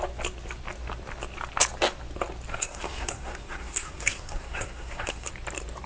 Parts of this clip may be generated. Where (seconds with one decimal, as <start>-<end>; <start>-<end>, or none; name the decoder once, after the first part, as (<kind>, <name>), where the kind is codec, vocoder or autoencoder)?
2.5-5.3 (codec, SNAC)